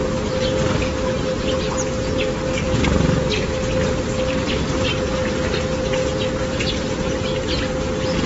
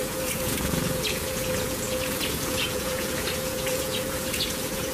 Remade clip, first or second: second